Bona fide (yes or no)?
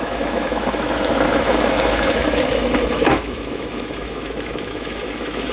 no